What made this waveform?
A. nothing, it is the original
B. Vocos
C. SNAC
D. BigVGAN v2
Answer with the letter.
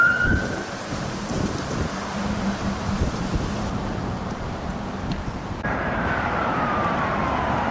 D